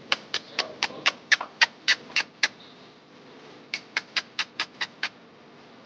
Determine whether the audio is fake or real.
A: fake